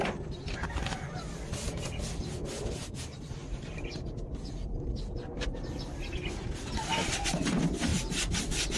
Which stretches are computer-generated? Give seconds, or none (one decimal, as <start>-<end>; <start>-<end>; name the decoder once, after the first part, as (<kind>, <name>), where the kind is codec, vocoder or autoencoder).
none